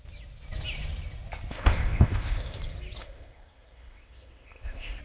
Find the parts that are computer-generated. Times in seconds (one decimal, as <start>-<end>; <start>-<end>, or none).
1.5-2.6; 3.0-5.0

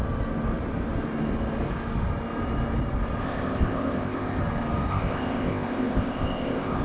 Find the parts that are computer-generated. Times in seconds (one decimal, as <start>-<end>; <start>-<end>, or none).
3.2-4.4; 4.9-6.8

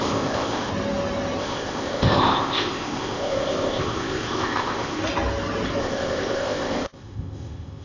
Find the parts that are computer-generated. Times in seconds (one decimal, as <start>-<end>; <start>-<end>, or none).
0.0-0.7; 1.4-5.0; 5.8-7.8